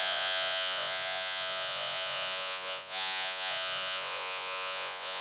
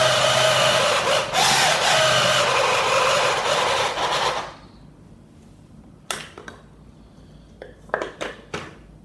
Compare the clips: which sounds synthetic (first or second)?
first